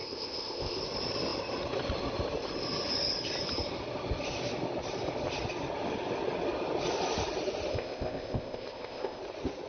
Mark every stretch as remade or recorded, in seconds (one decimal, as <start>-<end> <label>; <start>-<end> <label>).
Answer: 0.0-0.8 remade; 0.8-7.7 recorded; 7.7-9.2 remade; 9.2-9.7 recorded